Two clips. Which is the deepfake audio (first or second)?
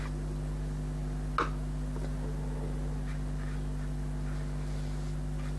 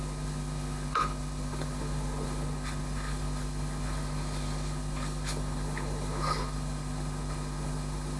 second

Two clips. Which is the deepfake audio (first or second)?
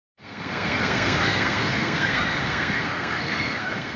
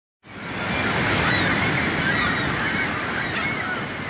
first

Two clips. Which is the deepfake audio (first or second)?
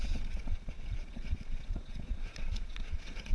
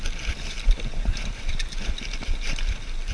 first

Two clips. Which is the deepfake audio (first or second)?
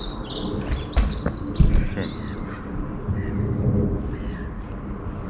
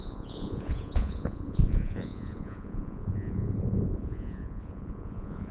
second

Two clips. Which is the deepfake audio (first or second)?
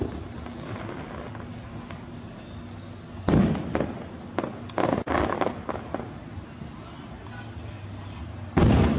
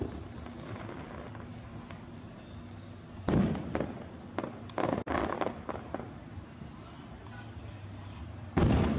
second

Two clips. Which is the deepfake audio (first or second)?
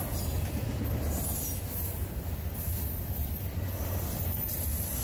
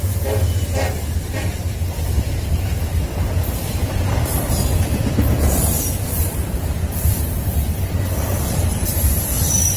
second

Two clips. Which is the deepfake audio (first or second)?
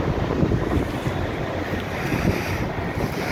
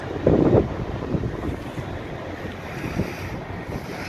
first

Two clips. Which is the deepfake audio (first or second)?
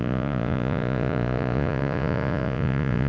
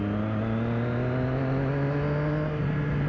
first